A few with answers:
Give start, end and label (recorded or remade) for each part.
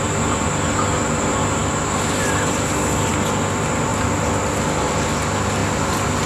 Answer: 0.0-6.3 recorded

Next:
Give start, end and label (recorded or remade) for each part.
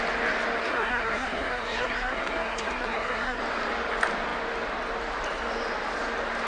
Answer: 0.0-0.6 recorded; 0.6-3.4 remade; 3.4-6.5 recorded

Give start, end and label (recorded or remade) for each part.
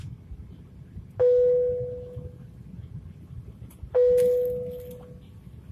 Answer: 0.0-5.7 recorded